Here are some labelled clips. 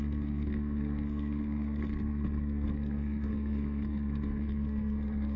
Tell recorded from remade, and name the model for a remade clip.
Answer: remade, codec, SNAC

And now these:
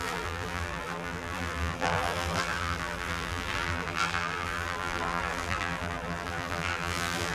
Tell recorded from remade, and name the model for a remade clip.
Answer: remade, vocoder, BigVGAN v2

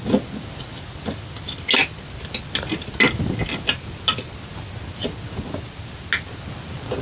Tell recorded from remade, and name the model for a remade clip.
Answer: recorded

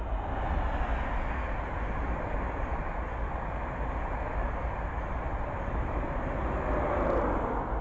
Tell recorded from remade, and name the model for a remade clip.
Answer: recorded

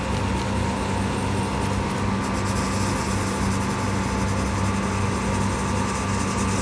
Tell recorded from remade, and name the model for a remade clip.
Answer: recorded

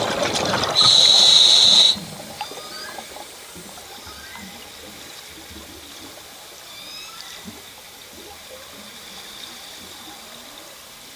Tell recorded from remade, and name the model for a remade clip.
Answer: remade, vocoder, BigVGAN v2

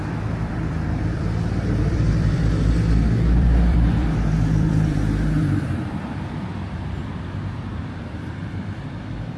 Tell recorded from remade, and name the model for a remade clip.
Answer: remade, vocoder, BigVGAN v2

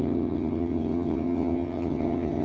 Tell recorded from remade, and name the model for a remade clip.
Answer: remade, vocoder, HiFi-GAN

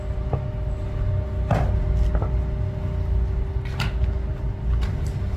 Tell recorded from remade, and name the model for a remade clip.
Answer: recorded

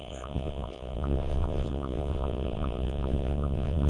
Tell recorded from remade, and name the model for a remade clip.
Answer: remade, vocoder, WaveNeXt